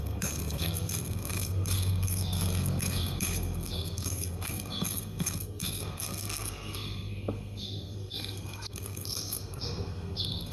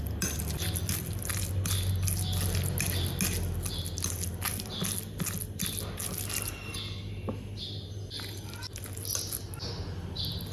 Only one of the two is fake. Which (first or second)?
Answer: first